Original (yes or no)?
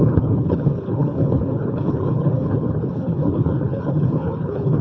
no